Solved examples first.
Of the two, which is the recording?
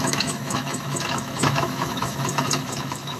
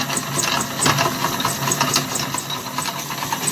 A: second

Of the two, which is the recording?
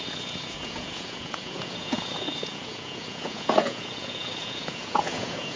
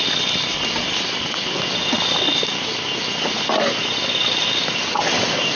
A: second